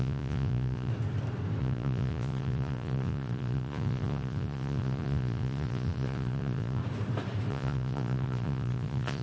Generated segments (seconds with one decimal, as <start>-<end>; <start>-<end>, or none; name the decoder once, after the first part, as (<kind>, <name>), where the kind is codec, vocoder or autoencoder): 0.0-0.9 (vocoder, Vocos); 1.6-6.8; 7.5-9.2